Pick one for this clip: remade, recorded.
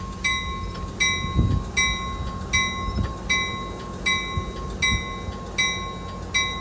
recorded